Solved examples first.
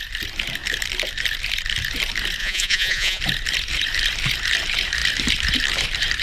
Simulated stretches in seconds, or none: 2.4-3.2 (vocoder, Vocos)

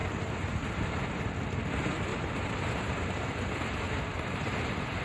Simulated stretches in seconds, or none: 0.0-1.3 (vocoder, BigVGAN v2); 2.1-5.0

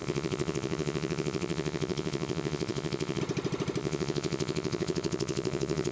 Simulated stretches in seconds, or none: 0.0-3.2 (vocoder, Vocos); 3.8-5.9

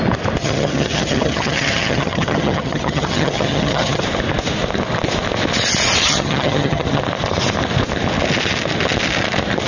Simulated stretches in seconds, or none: 0.4-4.0 (vocoder, HiFi-GAN); 6.0-7.0

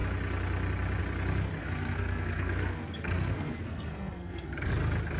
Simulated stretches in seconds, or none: 1.6-4.7 (codec, SNAC)

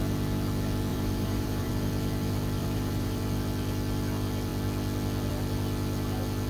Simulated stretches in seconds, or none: 0.9-1.7 (vocoder, BigVGAN v2); 2.6-3.2

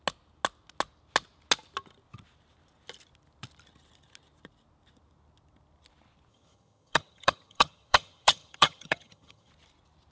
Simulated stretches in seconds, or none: 6.3-9.5 (vocoder, HiFi-GAN)